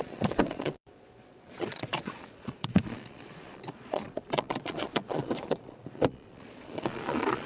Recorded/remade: remade